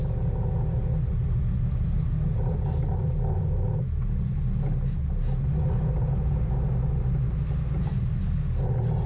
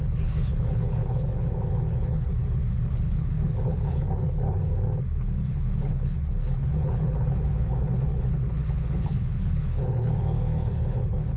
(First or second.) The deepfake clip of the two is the second